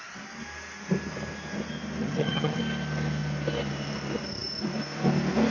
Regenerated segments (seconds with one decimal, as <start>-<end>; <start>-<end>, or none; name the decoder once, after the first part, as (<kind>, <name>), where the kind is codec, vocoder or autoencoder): 2.0-2.6 (vocoder, HiFi-GAN)